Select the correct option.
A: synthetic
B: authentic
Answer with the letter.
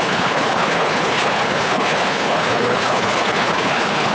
A